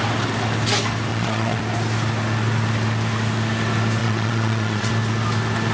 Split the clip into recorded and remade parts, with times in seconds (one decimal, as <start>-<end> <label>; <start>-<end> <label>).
0.0-1.1 recorded; 1.1-1.6 remade; 1.6-4.0 recorded; 4.0-4.9 remade; 4.9-5.7 recorded